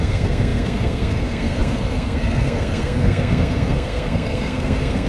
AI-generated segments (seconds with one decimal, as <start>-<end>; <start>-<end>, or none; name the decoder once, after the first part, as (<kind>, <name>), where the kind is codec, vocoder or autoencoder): 0.0-5.1 (codec, SNAC)